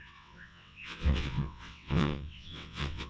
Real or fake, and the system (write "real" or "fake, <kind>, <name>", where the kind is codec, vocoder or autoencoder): fake, vocoder, WaveNeXt